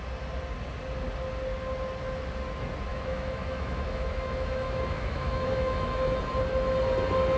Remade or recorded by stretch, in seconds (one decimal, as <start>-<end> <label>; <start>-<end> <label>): 0.0-2.9 recorded; 2.9-6.2 remade; 6.2-7.4 recorded